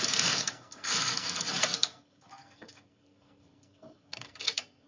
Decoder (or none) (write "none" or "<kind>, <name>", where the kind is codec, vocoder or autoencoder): codec, SNAC